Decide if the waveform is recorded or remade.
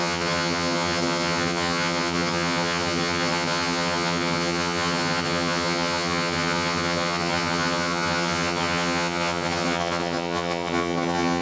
remade